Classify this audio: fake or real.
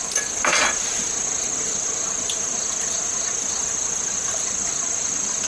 real